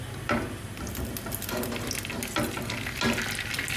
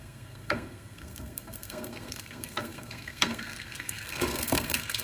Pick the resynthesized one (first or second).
second